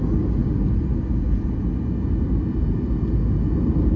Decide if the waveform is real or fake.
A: real